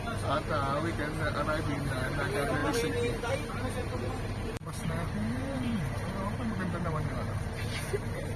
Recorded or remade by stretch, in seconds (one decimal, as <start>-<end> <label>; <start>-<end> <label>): 0.0-3.8 recorded; 3.8-8.4 remade